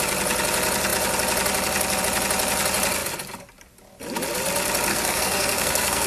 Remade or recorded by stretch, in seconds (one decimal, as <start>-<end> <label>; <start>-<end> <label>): 0.0-4.9 recorded; 4.9-6.1 remade